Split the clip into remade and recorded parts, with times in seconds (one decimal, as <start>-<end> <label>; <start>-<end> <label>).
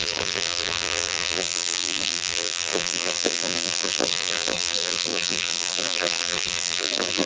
0.0-7.3 remade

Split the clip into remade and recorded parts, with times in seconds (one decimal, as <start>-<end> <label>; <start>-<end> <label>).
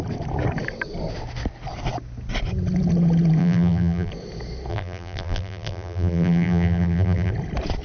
0.0-3.4 recorded; 3.4-4.1 remade; 4.1-4.7 recorded; 4.7-7.3 remade; 7.3-7.8 recorded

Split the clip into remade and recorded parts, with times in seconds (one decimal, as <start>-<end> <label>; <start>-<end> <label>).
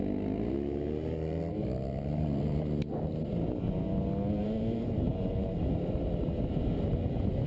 0.0-4.4 recorded; 4.4-5.6 remade; 5.6-7.5 recorded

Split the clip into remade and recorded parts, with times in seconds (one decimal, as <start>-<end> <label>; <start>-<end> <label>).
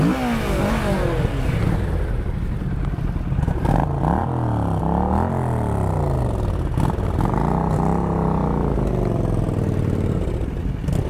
0.0-11.1 recorded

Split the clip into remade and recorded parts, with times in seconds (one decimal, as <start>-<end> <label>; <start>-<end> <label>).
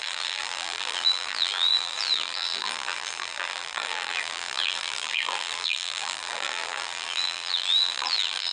0.0-8.5 remade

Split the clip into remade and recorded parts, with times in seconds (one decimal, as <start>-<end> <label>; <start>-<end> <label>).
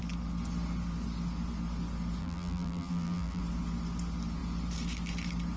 0.0-2.2 recorded; 2.2-3.4 remade; 3.4-5.6 recorded